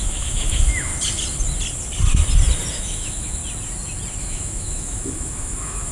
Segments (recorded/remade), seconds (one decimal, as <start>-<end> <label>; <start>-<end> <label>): 0.0-0.9 remade; 0.9-2.7 recorded; 2.7-3.4 remade; 3.4-4.2 recorded; 4.2-5.9 remade